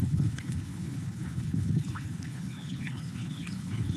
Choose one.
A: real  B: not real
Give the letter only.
B